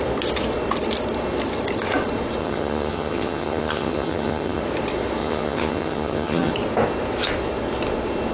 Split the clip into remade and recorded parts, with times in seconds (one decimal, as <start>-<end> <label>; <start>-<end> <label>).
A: 0.0-2.4 recorded; 2.4-4.6 remade; 4.6-5.2 recorded; 5.2-6.5 remade; 6.5-8.3 recorded